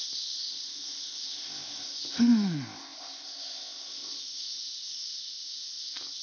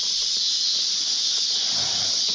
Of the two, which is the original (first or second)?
second